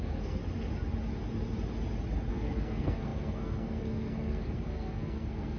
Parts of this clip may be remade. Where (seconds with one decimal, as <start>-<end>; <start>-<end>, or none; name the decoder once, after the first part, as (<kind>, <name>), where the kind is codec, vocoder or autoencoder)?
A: 0.0-0.4 (codec, SNAC); 2.3-5.6